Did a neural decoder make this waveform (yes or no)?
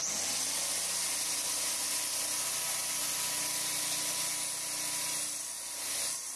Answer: no